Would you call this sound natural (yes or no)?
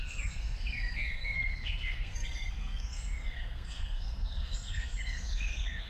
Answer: no